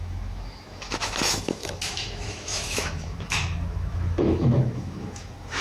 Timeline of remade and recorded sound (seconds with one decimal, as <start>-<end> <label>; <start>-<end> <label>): 0.0-5.6 remade